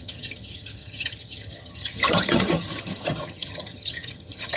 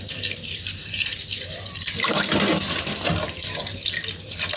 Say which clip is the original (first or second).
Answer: second